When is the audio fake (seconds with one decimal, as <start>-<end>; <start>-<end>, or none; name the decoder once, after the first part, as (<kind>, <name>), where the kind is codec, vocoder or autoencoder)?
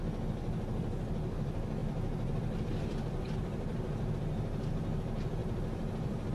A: 1.8-4.1 (vocoder, BigVGAN v2); 5.4-6.3